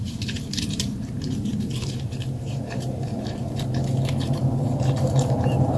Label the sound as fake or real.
fake